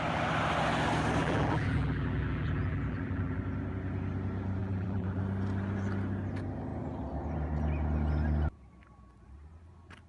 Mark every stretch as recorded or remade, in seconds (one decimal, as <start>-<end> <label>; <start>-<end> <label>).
0.0-1.2 recorded; 1.2-3.4 remade; 3.4-4.6 recorded; 4.6-5.2 remade; 5.2-10.1 recorded